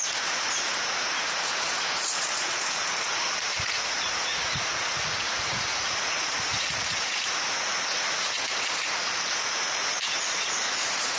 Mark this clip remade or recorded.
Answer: remade